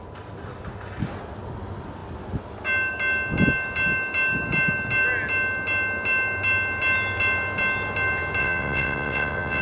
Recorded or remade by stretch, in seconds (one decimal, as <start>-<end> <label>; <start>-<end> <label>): 0.0-8.4 recorded; 8.4-9.6 remade